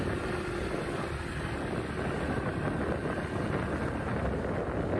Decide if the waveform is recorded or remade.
recorded